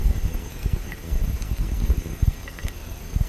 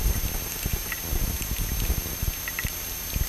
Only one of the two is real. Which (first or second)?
second